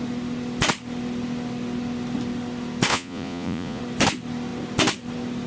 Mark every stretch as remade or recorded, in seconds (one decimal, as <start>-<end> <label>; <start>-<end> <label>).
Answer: 0.0-2.9 recorded; 2.9-3.8 remade; 3.8-5.5 recorded